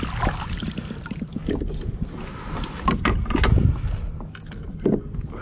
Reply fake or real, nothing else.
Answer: real